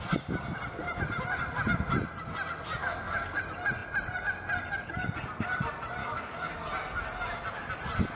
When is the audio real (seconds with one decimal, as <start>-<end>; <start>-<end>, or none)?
0.0-2.8; 3.4-6.0; 6.5-8.2